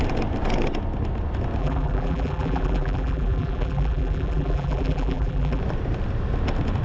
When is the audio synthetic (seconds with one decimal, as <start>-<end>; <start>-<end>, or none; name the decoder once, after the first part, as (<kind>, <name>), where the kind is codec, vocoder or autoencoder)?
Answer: 1.6-5.6 (vocoder, BigVGAN v2)